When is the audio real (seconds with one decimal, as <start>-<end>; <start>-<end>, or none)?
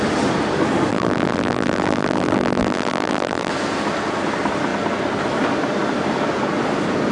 0.0-0.9; 3.5-7.1